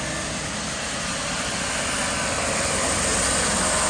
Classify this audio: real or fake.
real